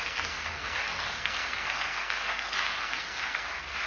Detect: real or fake fake